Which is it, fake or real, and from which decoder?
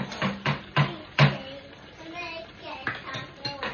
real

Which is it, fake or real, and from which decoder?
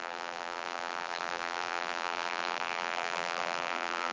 fake, vocoder, BigVGAN v2